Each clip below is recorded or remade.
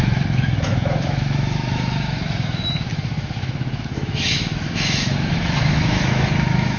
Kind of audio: remade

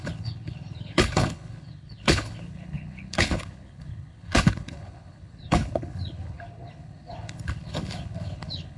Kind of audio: remade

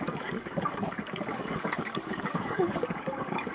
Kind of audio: remade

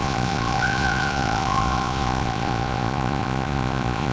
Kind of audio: remade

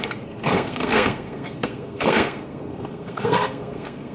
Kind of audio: remade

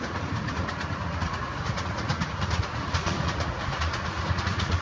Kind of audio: remade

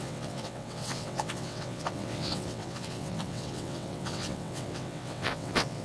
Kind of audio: remade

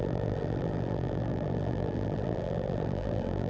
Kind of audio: remade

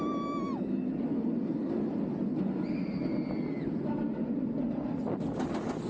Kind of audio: recorded